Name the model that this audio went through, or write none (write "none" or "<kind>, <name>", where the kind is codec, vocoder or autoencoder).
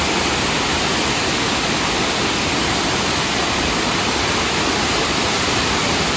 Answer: none